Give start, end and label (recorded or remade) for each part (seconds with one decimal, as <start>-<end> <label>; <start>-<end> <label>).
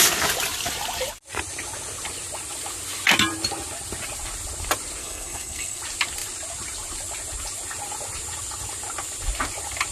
0.0-5.0 recorded; 5.0-5.8 remade; 5.8-9.9 recorded